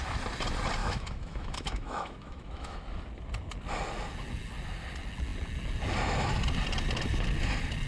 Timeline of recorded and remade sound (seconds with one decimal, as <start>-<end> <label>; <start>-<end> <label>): 0.0-0.8 recorded; 0.8-2.8 remade; 2.8-7.9 recorded